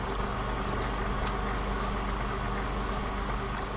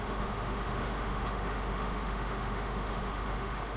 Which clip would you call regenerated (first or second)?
second